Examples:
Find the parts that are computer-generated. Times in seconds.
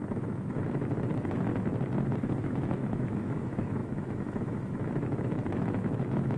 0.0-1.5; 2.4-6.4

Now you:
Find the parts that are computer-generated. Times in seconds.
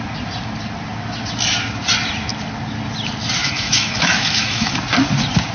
3.4-4.7